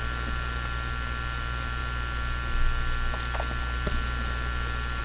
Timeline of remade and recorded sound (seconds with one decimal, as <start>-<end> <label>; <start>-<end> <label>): 0.0-5.0 recorded